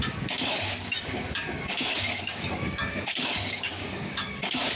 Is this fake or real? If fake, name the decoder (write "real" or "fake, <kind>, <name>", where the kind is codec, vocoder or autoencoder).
fake, codec, DAC